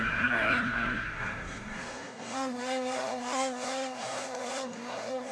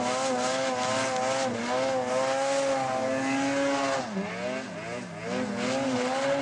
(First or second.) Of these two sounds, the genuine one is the second